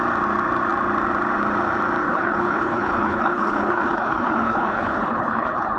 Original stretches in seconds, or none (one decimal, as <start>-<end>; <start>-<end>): 0.0-2.0